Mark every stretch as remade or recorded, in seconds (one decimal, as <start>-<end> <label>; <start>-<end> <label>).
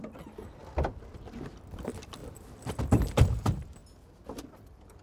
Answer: 0.0-0.6 remade; 0.6-1.8 recorded; 1.8-2.2 remade; 2.2-3.2 recorded; 3.2-3.8 remade; 3.8-4.5 recorded; 4.5-5.0 remade